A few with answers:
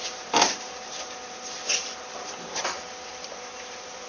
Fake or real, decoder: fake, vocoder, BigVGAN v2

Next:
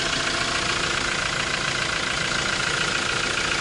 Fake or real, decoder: real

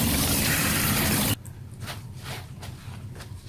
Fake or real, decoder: fake, vocoder, BigVGAN v2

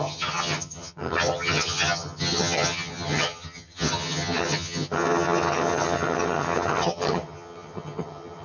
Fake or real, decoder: fake, vocoder, HiFi-GAN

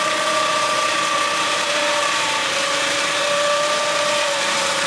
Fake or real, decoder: fake, vocoder, BigVGAN v2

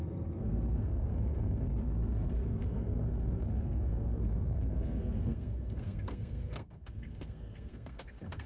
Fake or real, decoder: fake, codec, SNAC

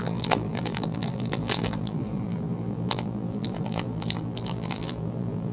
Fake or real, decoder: fake, vocoder, BigVGAN v2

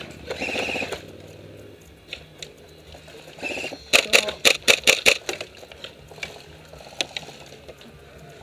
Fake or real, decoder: real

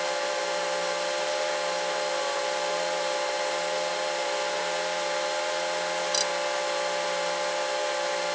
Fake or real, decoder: real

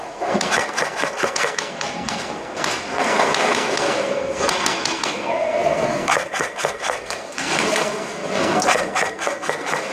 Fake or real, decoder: fake, codec, SNAC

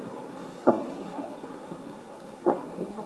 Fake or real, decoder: fake, codec, SNAC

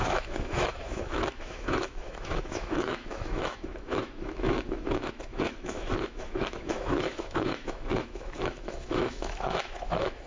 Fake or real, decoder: fake, autoencoder, DAC-VAE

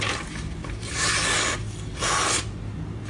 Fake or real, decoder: real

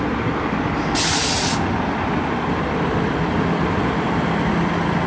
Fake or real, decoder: real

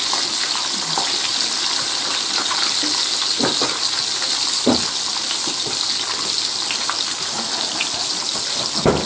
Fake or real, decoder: real